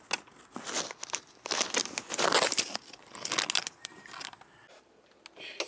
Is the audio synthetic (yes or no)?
no